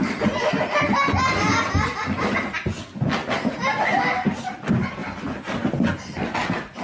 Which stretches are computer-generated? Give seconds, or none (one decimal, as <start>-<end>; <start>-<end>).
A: none